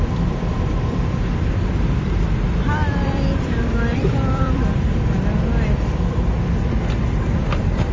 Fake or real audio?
fake